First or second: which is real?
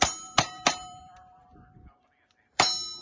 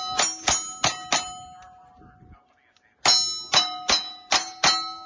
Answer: second